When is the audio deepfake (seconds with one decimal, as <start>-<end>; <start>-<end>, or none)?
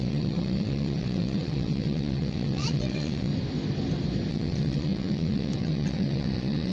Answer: 0.0-3.3; 4.3-6.7